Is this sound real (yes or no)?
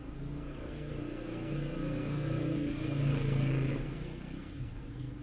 no